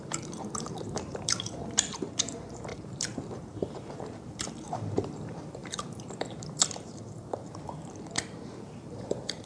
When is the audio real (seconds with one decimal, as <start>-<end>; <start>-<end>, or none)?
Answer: none